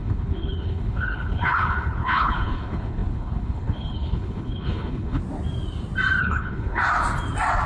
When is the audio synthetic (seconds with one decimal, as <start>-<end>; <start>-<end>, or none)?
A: 0.0-5.2; 6.2-6.8